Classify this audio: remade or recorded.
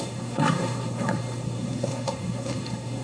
remade